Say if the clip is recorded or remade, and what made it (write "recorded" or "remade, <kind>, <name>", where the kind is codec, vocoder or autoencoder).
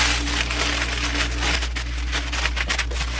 recorded